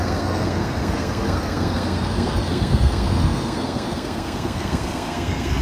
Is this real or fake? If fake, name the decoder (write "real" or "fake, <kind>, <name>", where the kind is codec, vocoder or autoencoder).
fake, codec, SNAC